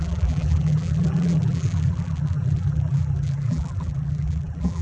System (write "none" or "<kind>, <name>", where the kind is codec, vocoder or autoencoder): vocoder, BigVGAN v2